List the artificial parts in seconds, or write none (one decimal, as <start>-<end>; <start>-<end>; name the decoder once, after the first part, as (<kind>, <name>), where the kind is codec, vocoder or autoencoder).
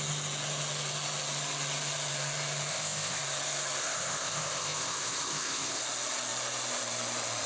2.7-3.2 (codec, ZipCodec); 3.8-5.8